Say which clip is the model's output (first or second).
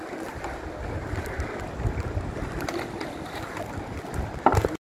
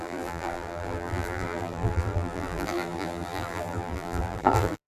second